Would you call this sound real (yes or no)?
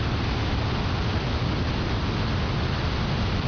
yes